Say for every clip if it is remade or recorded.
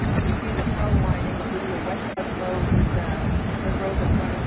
recorded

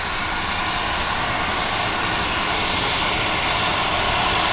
recorded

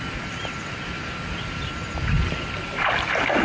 recorded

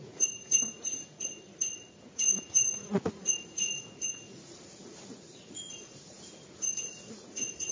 remade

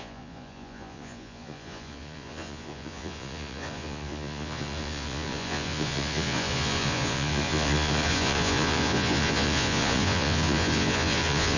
remade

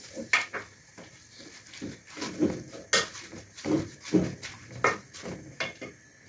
recorded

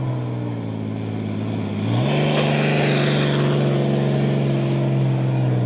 recorded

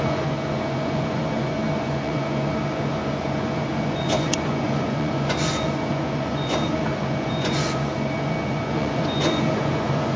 remade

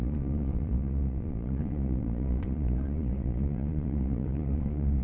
remade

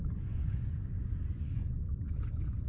remade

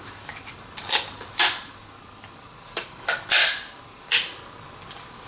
recorded